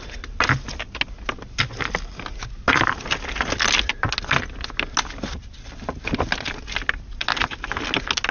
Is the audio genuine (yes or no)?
yes